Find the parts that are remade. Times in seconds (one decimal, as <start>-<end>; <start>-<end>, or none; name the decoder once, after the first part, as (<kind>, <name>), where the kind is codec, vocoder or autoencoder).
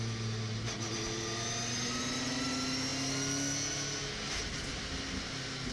none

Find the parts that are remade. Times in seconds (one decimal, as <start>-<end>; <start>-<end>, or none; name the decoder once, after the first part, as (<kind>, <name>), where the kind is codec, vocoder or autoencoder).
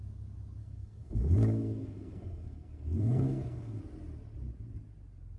0.6-3.8 (codec, SNAC)